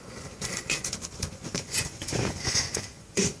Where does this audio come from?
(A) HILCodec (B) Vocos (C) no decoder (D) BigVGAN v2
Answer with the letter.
B